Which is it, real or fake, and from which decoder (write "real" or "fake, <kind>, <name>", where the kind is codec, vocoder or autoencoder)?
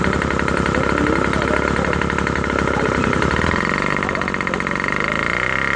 real